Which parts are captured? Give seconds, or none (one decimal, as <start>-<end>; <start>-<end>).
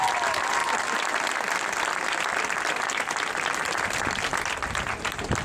0.0-0.6; 3.8-5.4